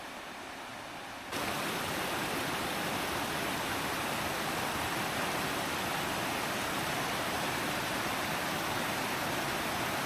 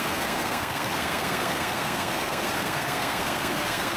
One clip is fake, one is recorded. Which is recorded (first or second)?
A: first